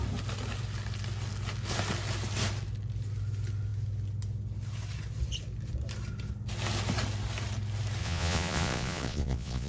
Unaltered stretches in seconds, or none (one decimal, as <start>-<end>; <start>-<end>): 0.0-8.0